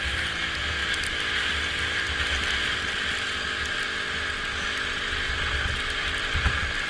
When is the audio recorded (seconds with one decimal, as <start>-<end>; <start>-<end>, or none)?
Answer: 0.0-6.9